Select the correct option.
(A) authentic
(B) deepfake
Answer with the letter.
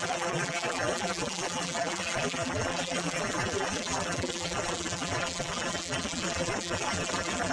B